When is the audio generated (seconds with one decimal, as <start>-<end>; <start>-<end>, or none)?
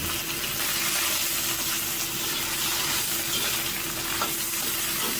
none